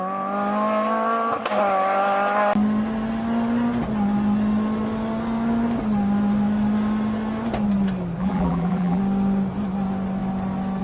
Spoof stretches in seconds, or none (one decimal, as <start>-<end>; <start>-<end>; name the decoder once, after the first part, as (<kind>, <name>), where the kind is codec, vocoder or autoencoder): 8.2-9.0 (vocoder, BigVGAN v2)